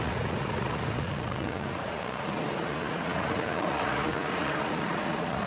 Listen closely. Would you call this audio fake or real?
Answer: fake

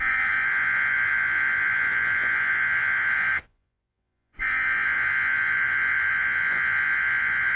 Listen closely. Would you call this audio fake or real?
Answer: fake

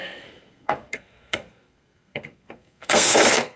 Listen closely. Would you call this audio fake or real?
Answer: fake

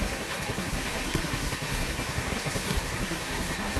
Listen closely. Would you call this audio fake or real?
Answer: fake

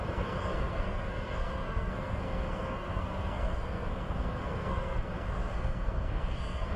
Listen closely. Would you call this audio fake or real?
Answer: fake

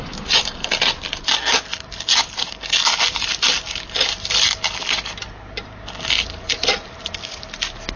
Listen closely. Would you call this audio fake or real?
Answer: real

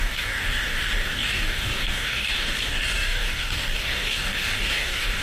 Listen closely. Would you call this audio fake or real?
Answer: fake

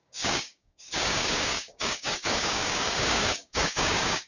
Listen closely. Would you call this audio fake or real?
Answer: fake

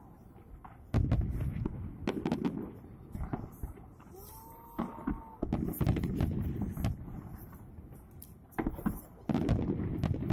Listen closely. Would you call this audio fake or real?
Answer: real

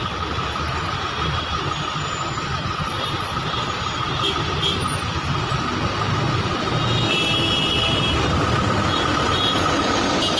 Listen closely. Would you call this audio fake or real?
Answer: real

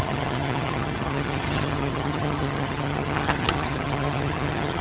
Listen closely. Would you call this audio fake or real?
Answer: fake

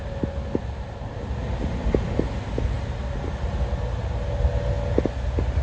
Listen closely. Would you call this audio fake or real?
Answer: real